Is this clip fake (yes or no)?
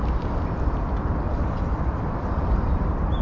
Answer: yes